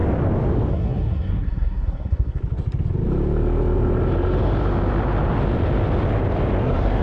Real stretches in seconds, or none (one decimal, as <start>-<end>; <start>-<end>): 0.0-0.7; 2.4-6.6